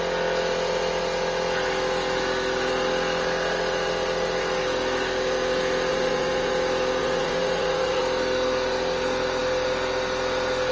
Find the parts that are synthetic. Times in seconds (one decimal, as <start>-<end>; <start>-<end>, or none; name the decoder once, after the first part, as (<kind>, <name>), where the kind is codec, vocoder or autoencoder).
5.9-6.5 (vocoder, Vocos); 7.0-8.0